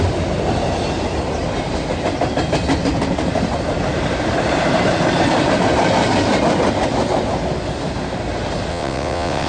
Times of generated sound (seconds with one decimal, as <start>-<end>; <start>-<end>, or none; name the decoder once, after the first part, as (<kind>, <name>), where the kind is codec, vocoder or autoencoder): 8.7-9.5 (vocoder, WaveNeXt)